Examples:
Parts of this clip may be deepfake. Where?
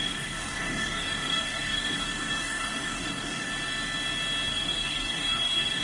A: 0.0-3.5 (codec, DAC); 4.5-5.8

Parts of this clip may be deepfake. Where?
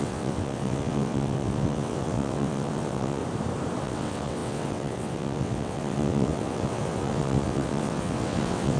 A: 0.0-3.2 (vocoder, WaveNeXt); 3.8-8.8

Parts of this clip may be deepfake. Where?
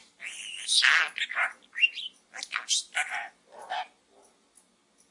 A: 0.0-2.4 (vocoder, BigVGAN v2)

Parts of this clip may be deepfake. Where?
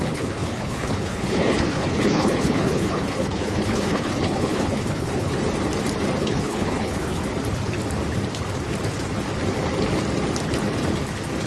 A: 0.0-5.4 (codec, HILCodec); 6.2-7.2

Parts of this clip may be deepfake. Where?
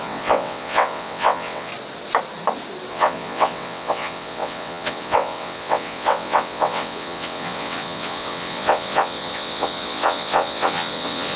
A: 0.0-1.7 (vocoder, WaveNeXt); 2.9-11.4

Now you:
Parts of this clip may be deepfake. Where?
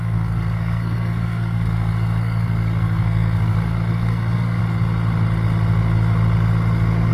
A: 0.0-4.6 (codec, SNAC)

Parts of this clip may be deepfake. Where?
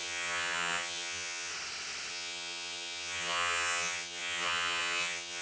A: 0.0-1.5 (vocoder, HiFi-GAN); 2.1-5.4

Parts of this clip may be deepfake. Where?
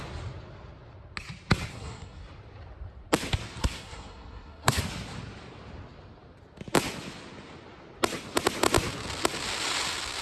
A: 1.7-2.2 (codec, SNAC); 3.6-4.8